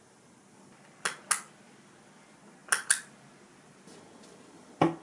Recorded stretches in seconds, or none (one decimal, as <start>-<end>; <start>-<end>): 0.0-5.0